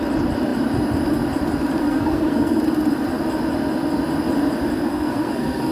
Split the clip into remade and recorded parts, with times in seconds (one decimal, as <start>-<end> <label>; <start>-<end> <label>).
0.0-1.8 recorded; 1.8-2.6 remade; 2.6-4.9 recorded; 4.9-5.7 remade